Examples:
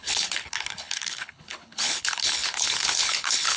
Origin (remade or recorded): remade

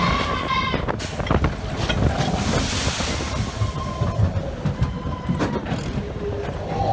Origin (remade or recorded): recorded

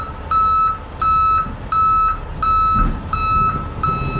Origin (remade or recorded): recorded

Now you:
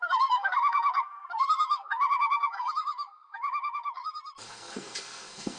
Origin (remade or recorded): remade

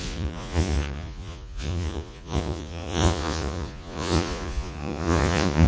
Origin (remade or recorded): remade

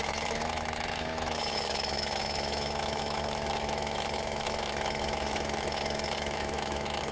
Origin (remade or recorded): remade